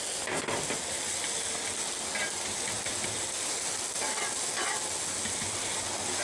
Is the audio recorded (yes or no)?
yes